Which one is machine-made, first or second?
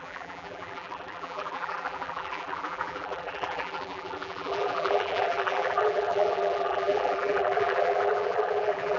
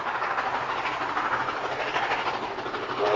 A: first